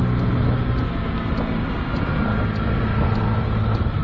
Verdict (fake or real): real